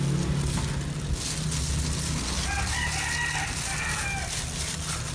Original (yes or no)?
yes